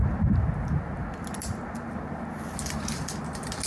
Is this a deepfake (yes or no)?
no